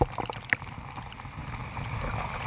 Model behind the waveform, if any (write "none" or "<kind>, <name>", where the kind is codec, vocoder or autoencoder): none